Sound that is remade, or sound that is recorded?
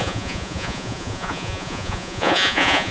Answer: remade